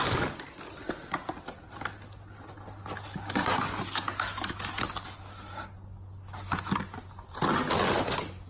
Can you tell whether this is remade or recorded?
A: recorded